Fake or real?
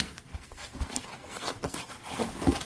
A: fake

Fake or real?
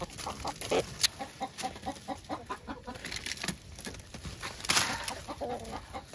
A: real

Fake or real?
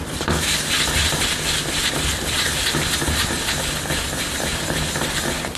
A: real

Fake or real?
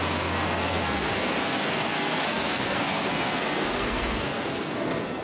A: fake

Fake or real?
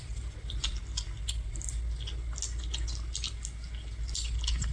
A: real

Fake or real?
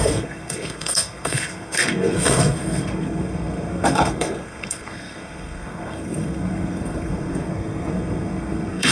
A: fake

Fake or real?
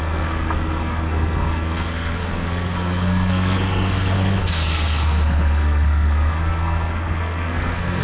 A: fake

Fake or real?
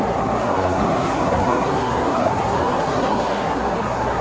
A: fake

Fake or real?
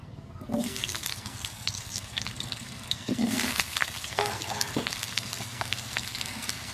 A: fake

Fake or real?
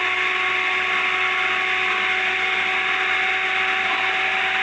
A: real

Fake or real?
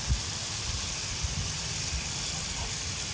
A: real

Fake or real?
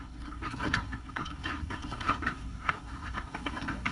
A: fake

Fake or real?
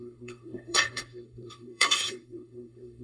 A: fake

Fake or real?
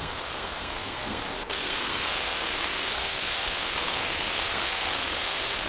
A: fake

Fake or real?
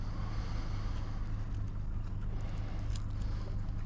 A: real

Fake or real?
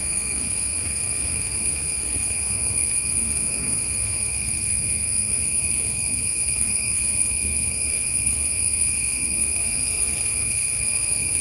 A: fake